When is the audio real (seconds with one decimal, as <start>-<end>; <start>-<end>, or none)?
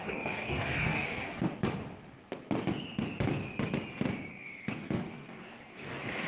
1.6-4.3